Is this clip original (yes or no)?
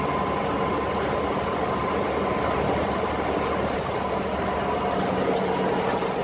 yes